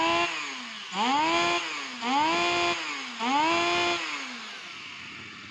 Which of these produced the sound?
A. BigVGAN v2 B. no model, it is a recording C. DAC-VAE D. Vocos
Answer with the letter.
B